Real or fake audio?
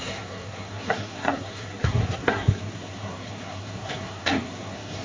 fake